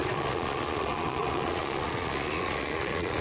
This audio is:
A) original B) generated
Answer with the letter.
B